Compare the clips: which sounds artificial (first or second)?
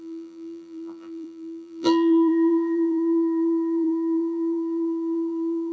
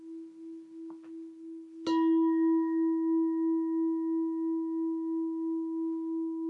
first